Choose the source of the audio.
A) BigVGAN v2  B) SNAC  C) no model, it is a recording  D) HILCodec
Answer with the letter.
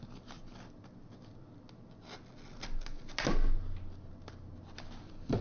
C